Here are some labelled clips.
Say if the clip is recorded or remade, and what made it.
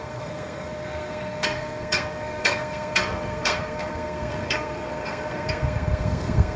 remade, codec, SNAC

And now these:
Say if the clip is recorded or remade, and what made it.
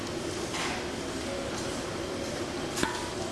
recorded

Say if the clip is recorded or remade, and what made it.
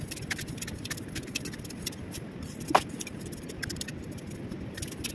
recorded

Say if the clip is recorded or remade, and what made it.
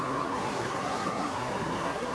remade, codec, SNAC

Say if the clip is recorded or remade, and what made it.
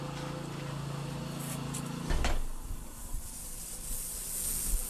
recorded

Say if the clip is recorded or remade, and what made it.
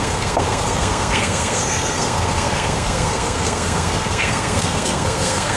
remade, codec, SNAC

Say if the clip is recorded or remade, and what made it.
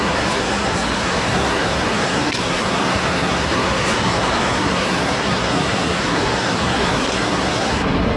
remade, codec, SNAC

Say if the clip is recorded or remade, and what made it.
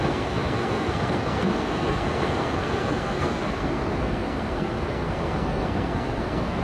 remade, codec, SNAC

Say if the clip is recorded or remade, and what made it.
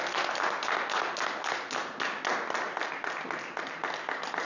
recorded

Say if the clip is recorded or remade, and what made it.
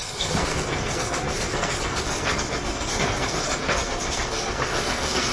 remade, codec, SNAC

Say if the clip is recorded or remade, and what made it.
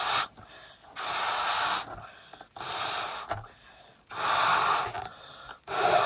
recorded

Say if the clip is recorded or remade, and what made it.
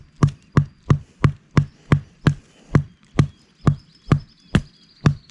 recorded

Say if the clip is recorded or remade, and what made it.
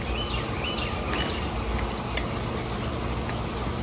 recorded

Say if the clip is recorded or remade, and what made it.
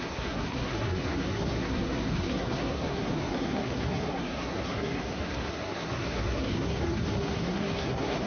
remade, codec, SNAC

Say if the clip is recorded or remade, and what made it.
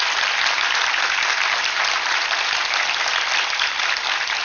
recorded